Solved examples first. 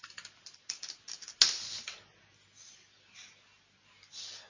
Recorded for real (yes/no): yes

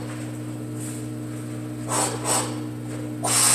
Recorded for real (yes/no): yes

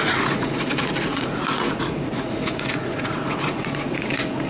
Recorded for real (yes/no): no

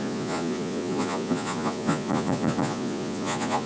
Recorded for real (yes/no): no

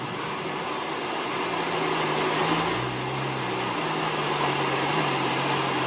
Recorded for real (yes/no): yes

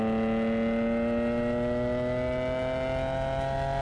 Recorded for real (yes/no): yes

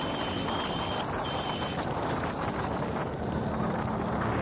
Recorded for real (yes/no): yes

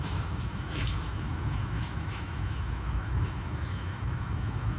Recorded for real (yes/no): no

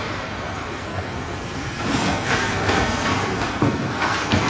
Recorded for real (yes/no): no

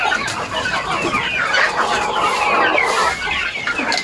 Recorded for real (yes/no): yes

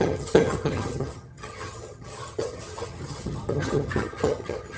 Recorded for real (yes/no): no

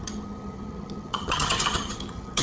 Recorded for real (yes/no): no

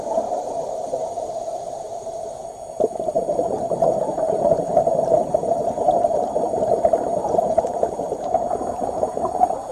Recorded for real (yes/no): no